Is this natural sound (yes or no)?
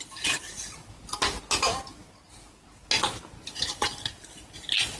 yes